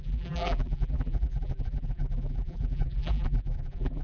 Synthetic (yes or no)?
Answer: yes